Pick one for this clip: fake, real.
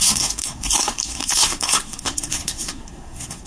fake